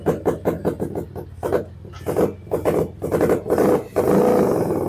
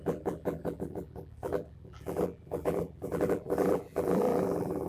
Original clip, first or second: first